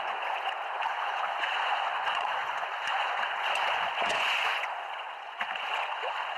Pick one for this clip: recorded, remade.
remade